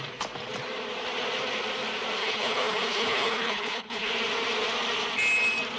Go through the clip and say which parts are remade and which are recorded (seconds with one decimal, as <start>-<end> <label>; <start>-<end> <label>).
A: 0.0-2.2 recorded; 2.2-4.1 remade; 4.1-5.8 recorded